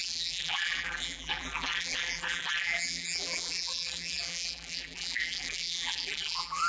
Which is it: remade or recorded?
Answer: remade